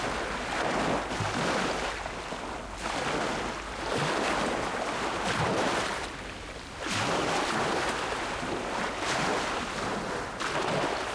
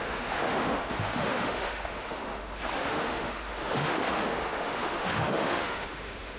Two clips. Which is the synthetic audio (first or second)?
second